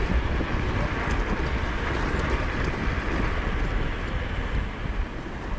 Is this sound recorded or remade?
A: recorded